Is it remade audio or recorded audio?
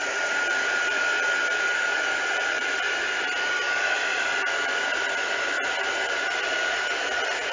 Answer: remade